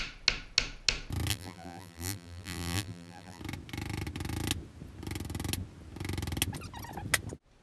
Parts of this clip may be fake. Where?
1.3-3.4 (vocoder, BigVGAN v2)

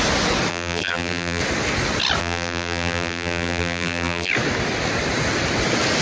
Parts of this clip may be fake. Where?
0.5-1.4 (vocoder, BigVGAN v2); 2.2-4.3

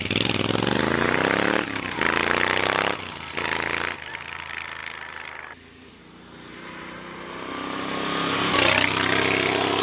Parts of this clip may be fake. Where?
4.8-5.3 (vocoder, BigVGAN v2)